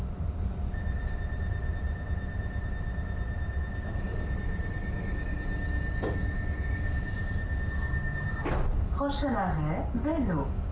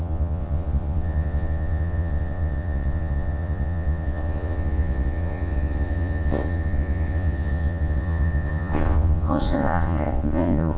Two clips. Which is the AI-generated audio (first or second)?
second